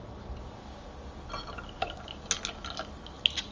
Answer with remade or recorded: recorded